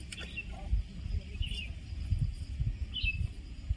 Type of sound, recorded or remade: recorded